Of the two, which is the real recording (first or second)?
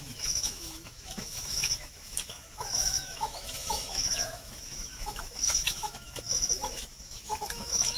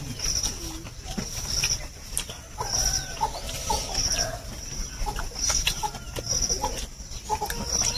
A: second